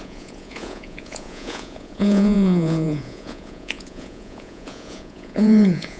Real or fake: fake